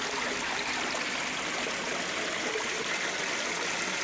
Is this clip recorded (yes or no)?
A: yes